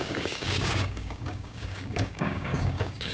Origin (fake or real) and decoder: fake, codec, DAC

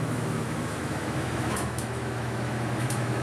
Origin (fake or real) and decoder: fake, autoencoder, DAC-VAE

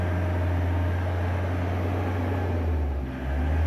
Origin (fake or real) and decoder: real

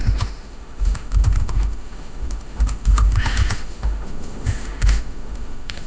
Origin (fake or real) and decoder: fake, autoencoder, DAC-VAE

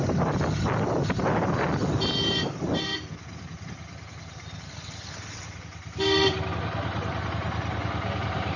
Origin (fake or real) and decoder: real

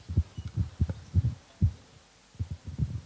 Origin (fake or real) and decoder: real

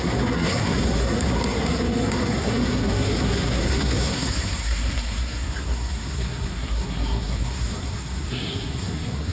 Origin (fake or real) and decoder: fake, codec, SNAC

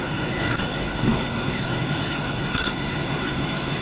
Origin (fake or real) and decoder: fake, codec, SNAC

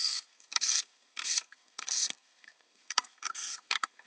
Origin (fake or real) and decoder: fake, codec, SNAC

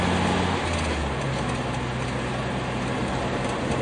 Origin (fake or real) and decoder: real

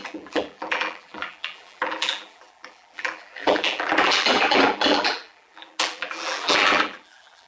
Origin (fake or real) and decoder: fake, vocoder, BigVGAN v2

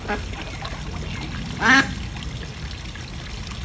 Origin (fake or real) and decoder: real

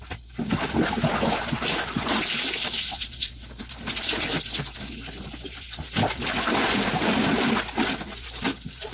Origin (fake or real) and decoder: real